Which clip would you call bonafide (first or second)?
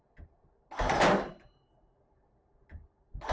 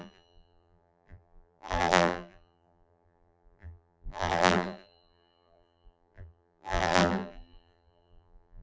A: first